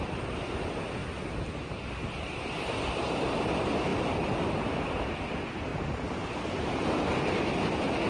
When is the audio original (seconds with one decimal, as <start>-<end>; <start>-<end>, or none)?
0.0-5.7; 6.8-8.1